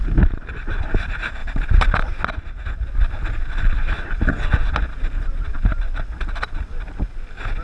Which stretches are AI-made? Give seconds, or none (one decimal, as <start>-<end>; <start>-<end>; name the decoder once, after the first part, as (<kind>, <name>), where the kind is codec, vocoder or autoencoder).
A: 1.4-1.9 (vocoder, BigVGAN v2)